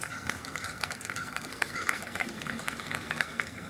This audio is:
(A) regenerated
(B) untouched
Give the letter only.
A